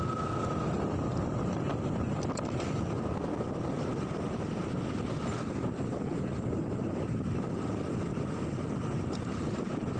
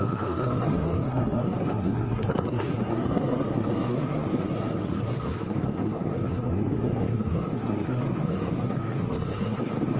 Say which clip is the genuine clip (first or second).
first